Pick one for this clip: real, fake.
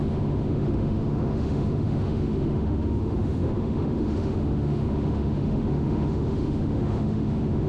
fake